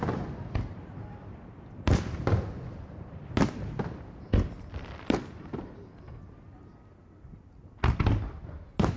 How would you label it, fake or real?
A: real